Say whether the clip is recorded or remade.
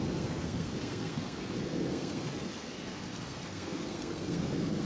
remade